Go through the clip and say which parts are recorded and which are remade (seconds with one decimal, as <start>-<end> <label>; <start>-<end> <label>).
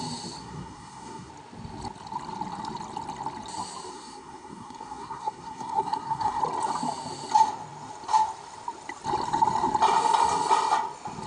0.0-0.4 recorded; 0.4-1.3 remade; 1.3-3.9 recorded; 3.9-6.4 remade; 6.4-11.3 recorded